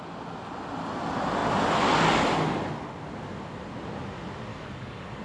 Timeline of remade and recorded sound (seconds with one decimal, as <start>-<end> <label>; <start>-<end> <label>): 0.0-4.5 recorded; 4.5-5.2 remade